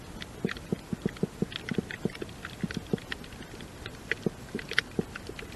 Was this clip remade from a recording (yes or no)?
no